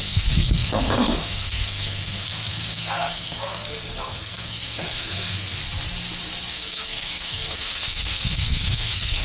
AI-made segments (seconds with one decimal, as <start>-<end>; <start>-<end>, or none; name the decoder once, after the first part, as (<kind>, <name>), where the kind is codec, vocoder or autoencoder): 0.0-5.6 (codec, SNAC); 6.5-9.2